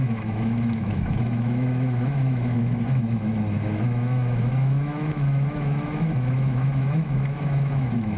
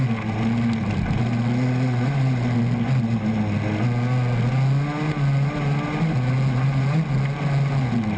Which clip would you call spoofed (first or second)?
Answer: first